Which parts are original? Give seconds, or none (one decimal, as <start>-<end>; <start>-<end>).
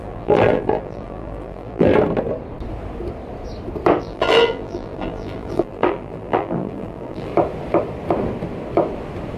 1.9-4.0; 7.3-9.4